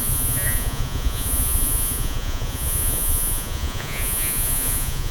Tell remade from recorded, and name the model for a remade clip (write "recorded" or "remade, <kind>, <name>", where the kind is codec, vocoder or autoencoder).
remade, vocoder, Vocos